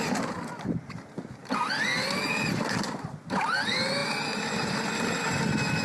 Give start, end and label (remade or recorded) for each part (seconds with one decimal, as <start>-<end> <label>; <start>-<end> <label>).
0.0-5.8 recorded